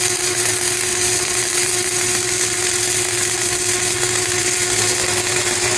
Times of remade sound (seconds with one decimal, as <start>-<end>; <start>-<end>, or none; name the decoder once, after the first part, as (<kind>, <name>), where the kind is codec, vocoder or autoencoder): none